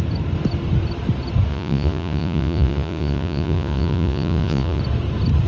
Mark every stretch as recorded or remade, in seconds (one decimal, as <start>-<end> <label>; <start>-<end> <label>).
0.0-1.5 recorded; 1.5-4.8 remade; 4.8-5.5 recorded

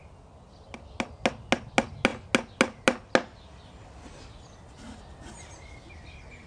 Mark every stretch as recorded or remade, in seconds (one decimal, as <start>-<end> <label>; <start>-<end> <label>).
0.0-6.5 recorded

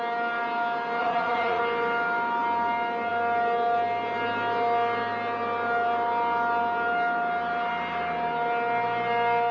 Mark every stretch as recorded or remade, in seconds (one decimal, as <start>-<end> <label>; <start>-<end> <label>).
0.0-1.0 recorded; 1.0-1.6 remade; 1.6-9.5 recorded

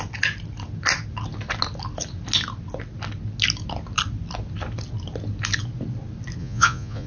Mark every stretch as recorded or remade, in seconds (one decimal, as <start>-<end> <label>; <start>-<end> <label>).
0.0-6.4 recorded; 6.4-7.1 remade

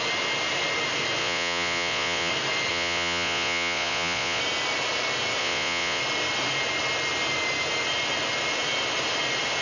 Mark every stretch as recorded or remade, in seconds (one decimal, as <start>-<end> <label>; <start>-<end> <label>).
0.0-1.2 recorded; 1.2-2.3 remade; 2.3-2.7 recorded; 2.7-4.4 remade; 4.4-5.4 recorded; 5.4-6.0 remade; 6.0-9.6 recorded

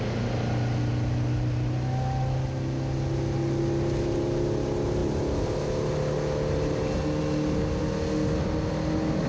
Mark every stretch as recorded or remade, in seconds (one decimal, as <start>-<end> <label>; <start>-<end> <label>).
0.0-9.3 recorded

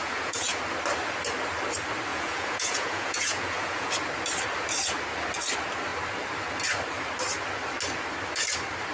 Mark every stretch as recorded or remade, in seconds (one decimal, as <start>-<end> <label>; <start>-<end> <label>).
0.0-0.6 remade; 0.6-2.1 recorded; 2.1-3.9 remade; 3.9-8.9 recorded

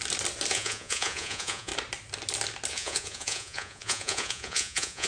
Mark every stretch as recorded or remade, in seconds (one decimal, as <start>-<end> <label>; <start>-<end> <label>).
0.0-0.5 recorded; 0.5-1.7 remade; 1.7-2.7 recorded; 2.7-5.1 remade